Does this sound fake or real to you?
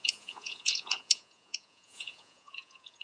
fake